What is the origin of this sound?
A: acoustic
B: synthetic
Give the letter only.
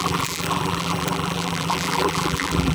B